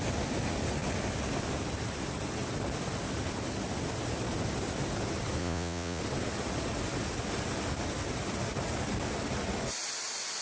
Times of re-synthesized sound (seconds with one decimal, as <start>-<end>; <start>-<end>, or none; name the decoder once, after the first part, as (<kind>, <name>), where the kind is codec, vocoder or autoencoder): 5.4-6.0 (vocoder, Vocos)